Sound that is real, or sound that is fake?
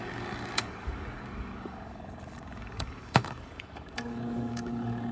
fake